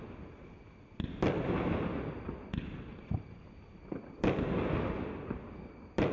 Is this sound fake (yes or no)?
no